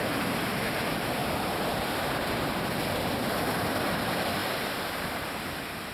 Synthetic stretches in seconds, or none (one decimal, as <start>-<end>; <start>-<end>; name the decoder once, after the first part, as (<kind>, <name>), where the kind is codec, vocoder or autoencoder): 0.0-1.2 (vocoder, BigVGAN v2); 3.9-5.9